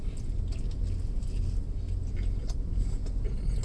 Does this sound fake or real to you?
real